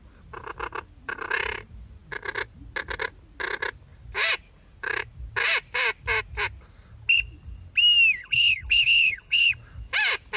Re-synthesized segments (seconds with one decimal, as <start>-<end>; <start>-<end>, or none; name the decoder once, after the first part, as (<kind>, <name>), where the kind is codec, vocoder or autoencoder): 8.2-9.5 (codec, HILCodec)